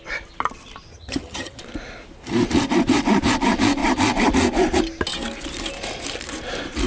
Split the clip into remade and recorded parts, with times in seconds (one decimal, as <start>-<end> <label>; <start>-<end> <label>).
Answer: 0.0-0.9 recorded; 0.9-1.6 remade; 1.6-6.9 recorded